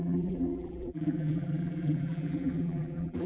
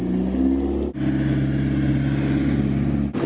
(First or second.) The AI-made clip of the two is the first